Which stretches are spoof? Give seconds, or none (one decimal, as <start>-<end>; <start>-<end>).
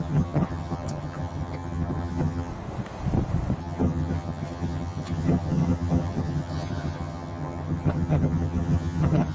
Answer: 0.0-2.5; 3.6-9.3